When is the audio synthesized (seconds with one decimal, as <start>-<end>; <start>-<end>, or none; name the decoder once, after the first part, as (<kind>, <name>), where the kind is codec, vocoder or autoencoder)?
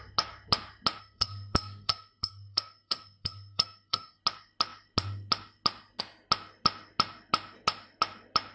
1.0-4.2 (codec, SNAC)